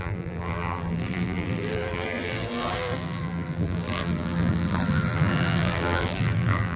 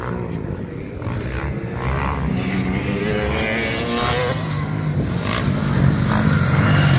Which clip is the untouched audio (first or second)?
second